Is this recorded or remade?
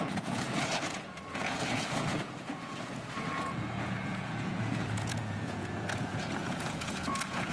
remade